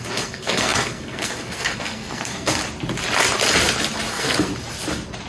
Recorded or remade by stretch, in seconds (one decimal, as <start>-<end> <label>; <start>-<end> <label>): 0.0-2.6 remade; 2.6-4.1 recorded; 4.1-4.5 remade; 4.5-5.3 recorded